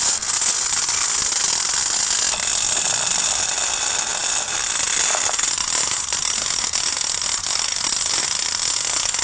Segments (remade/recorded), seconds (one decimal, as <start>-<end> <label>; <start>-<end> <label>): 0.0-9.2 recorded